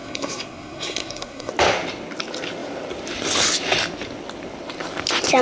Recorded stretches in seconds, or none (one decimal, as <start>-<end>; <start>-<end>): 1.5-5.4